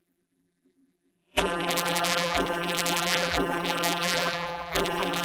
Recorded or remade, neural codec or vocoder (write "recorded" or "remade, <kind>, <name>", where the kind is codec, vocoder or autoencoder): remade, vocoder, BigVGAN v2